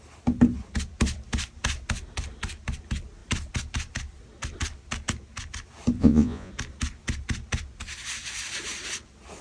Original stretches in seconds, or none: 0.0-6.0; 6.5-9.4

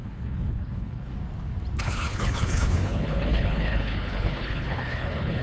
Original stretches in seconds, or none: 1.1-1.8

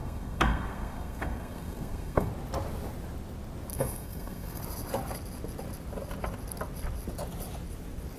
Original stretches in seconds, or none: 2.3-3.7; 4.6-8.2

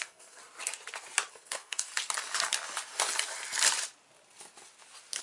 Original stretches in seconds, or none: 0.4-1.3; 1.9-5.2

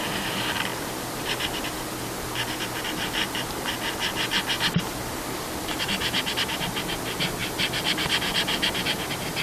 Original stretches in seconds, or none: 0.0-9.4